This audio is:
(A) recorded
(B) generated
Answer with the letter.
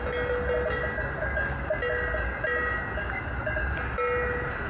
A